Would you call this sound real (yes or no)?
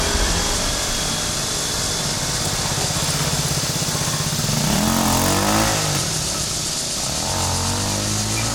yes